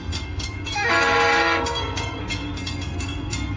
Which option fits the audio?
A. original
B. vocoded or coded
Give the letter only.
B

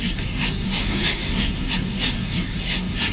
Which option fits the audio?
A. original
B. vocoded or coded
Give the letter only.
B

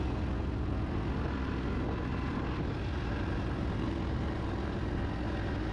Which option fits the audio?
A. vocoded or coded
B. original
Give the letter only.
B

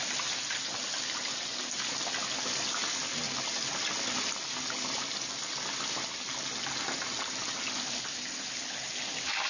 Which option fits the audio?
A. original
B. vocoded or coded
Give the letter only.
A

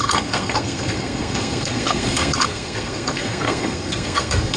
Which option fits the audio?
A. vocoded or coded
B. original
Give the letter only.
A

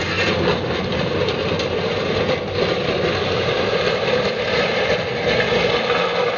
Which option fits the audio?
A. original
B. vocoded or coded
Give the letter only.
A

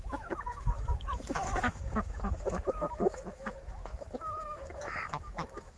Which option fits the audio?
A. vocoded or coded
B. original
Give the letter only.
A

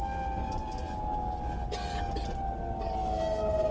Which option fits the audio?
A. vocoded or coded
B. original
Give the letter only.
B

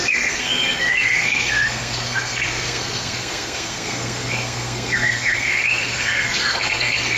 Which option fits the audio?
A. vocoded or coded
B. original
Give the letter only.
A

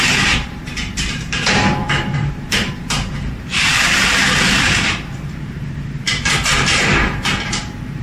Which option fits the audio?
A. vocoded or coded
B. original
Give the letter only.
A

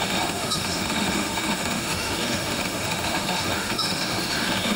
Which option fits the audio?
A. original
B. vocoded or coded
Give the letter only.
B